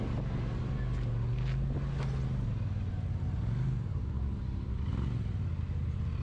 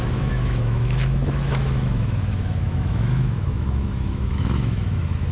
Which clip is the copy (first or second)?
second